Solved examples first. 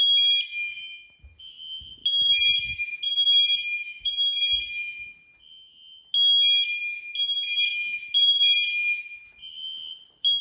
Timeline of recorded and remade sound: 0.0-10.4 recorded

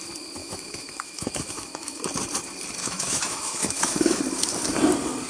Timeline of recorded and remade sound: 0.0-0.4 recorded; 0.4-2.0 remade; 2.0-2.8 recorded; 2.8-4.2 remade; 4.2-5.3 recorded

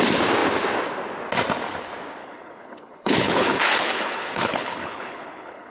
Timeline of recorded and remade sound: 0.0-2.2 recorded; 2.2-5.7 remade

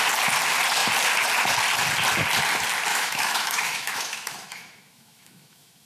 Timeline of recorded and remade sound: 0.0-2.9 recorded; 2.9-5.9 remade